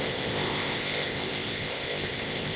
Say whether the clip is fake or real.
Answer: fake